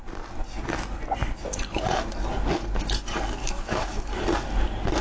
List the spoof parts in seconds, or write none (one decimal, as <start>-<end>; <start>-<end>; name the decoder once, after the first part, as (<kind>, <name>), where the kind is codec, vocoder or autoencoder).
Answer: 3.4-4.2 (autoencoder, DAC-VAE)